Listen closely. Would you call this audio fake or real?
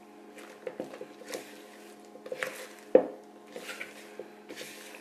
real